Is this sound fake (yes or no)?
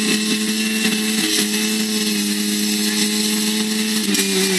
no